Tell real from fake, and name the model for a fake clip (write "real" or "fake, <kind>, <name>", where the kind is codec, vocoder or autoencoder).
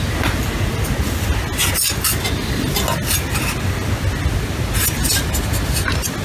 real